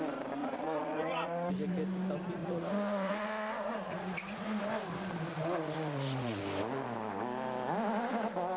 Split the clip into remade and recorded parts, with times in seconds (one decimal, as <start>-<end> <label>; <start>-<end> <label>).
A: 0.0-0.4 recorded; 0.4-1.5 remade; 1.5-2.4 recorded; 2.4-4.6 remade; 4.6-5.3 recorded; 5.3-6.4 remade; 6.4-8.6 recorded